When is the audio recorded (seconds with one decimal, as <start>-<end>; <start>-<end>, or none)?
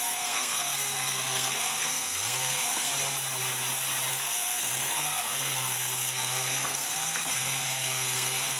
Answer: 2.9-4.1